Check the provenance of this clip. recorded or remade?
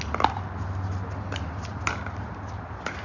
recorded